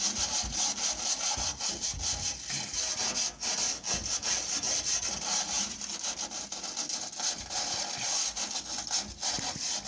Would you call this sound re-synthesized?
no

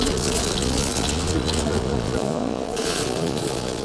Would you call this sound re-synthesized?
yes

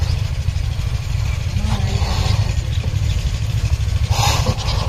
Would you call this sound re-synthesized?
no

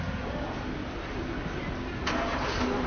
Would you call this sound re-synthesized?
no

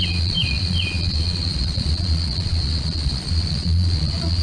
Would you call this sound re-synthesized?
yes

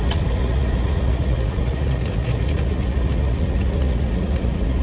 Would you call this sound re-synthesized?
yes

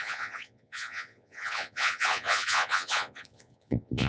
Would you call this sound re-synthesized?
yes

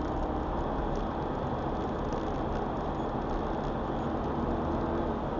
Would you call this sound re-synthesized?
no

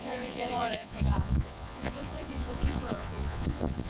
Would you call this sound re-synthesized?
yes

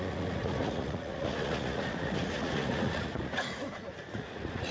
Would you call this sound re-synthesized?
yes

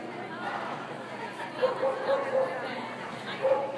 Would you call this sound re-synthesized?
no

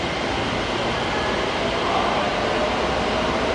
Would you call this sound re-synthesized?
no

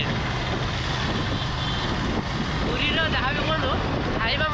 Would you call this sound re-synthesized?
no